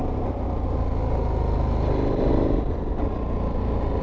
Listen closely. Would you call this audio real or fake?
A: real